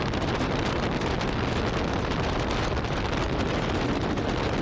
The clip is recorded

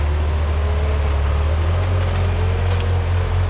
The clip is recorded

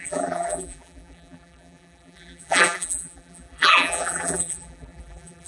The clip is remade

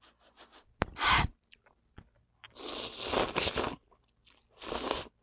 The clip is recorded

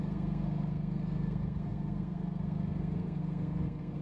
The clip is remade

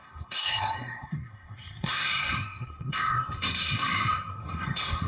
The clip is remade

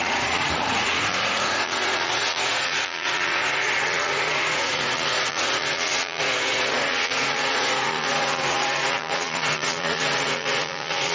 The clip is remade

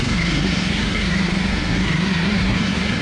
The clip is remade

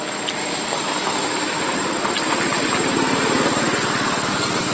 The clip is recorded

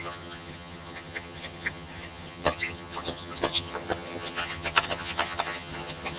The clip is remade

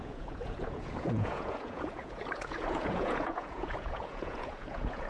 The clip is remade